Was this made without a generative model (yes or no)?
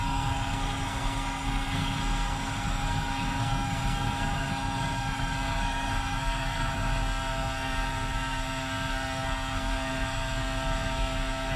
no